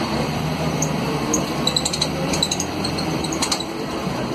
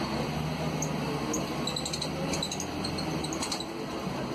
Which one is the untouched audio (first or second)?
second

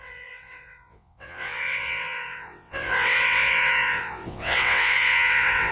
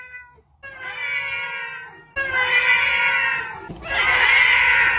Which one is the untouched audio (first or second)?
second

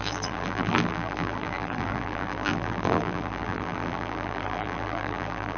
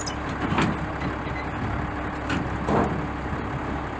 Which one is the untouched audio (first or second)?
second